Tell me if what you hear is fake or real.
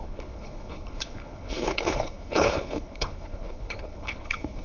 fake